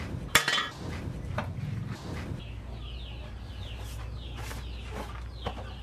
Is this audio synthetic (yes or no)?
no